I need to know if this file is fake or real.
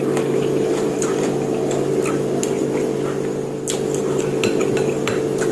real